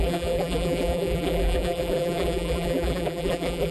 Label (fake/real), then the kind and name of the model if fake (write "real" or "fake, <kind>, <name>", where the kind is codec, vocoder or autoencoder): fake, vocoder, BigVGAN v2